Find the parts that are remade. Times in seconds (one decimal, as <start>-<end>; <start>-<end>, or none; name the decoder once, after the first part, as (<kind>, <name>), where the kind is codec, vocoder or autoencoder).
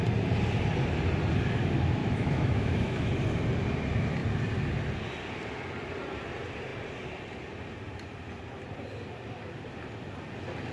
2.0-3.1 (autoencoder, DAC-VAE)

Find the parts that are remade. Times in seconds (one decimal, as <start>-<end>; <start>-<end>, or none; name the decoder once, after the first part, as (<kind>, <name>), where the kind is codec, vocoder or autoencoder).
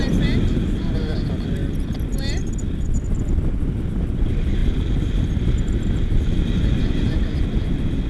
none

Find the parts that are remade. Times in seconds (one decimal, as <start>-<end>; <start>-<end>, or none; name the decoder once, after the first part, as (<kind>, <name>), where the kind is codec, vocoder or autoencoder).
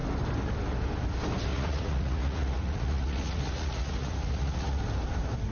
1.5-4.8 (vocoder, Vocos)